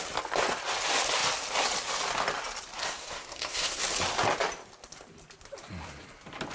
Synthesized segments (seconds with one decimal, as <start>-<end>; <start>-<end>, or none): 2.8-3.8